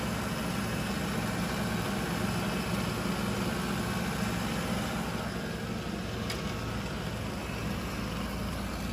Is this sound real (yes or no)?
yes